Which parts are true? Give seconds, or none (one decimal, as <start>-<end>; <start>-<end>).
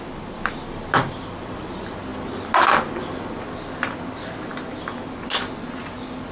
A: 0.0-6.3